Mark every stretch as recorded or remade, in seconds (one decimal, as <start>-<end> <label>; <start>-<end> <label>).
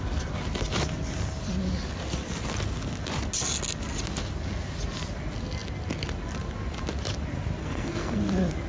0.0-7.6 recorded; 7.6-8.2 remade; 8.2-8.7 recorded